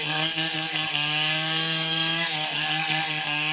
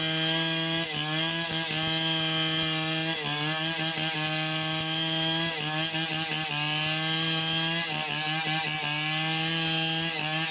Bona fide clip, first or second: second